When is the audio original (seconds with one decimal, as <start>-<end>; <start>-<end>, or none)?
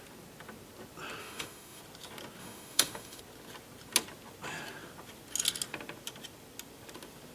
0.0-1.2; 1.8-2.4; 3.2-7.3